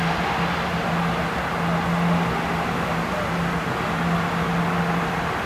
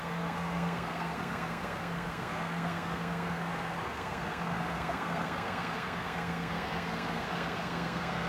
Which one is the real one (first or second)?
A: first